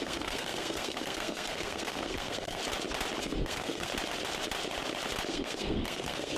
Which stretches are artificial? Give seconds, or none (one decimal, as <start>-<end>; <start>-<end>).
0.0-2.6; 3.2-3.9; 5.3-6.4